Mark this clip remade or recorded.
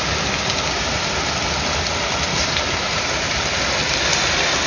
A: recorded